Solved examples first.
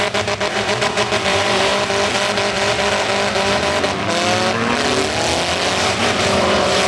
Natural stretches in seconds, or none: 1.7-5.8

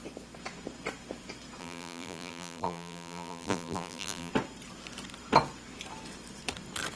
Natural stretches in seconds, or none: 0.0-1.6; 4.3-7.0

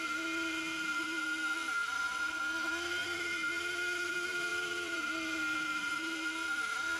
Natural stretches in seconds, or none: 0.0-1.8; 2.4-3.0; 3.5-4.5; 5.0-7.0